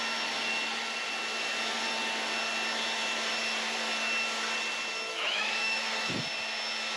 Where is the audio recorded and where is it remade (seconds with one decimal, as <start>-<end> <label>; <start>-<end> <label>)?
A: 0.0-5.1 recorded; 5.1-6.1 remade; 6.1-7.0 recorded